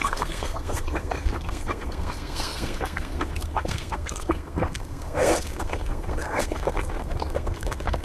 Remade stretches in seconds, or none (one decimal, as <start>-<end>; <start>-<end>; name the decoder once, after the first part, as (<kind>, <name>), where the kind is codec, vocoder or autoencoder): 0.0-8.0 (codec, SNAC)